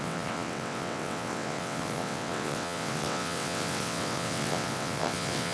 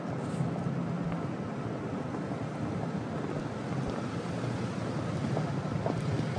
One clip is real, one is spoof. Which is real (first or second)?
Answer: second